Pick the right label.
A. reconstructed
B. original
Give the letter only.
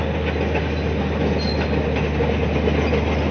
B